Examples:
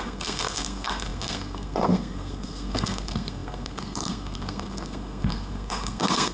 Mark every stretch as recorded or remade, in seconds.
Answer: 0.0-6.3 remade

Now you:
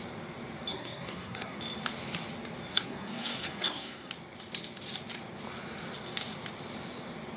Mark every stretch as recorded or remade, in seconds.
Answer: 0.0-0.7 recorded; 0.7-1.6 remade; 1.6-2.7 recorded; 2.7-4.1 remade; 4.1-7.4 recorded

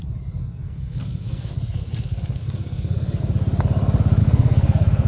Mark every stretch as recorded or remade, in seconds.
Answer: 0.0-0.4 recorded; 0.4-3.2 remade; 3.2-4.2 recorded; 4.2-5.1 remade